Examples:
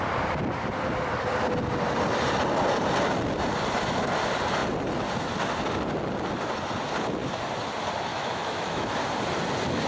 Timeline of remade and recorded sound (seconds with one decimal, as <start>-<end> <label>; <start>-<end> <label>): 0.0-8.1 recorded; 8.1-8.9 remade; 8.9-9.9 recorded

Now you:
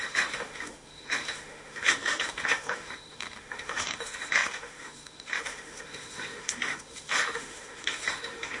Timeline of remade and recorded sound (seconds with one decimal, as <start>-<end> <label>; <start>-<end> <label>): 0.0-8.6 remade

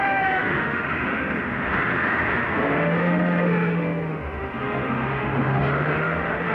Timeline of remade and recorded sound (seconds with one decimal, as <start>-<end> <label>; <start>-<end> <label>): 0.0-6.5 remade

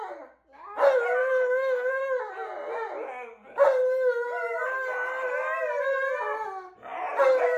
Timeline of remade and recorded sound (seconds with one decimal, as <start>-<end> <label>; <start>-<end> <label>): 0.0-1.2 recorded; 1.2-1.9 remade; 1.9-7.6 recorded

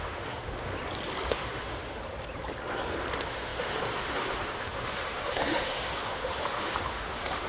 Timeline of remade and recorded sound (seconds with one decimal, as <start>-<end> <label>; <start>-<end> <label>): 0.0-0.7 remade; 0.7-1.3 recorded; 1.3-2.0 remade; 2.0-3.1 recorded; 3.1-7.5 remade

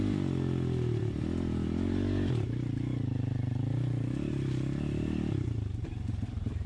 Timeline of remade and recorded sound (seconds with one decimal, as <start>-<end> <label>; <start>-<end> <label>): 0.0-6.7 recorded

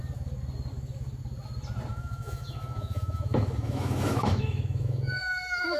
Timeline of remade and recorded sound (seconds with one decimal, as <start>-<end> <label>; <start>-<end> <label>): 0.0-1.9 recorded; 1.9-5.8 remade

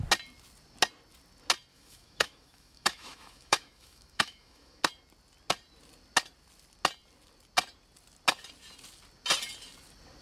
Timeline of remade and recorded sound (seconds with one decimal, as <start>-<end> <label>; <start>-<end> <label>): 0.0-1.7 recorded; 1.7-4.8 remade; 4.8-10.2 recorded